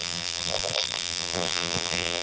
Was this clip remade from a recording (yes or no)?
yes